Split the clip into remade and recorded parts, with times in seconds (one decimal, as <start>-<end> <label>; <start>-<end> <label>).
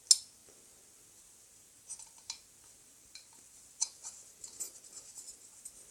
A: 0.0-5.9 recorded